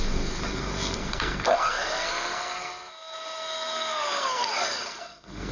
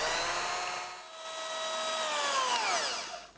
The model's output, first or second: first